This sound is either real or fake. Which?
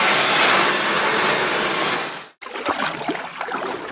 real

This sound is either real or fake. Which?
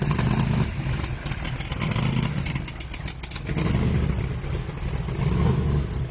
real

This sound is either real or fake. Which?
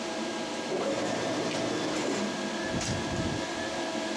real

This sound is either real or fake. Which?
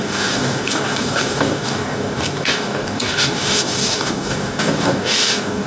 fake